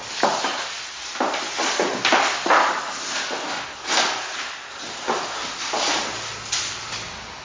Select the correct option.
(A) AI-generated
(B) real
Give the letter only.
B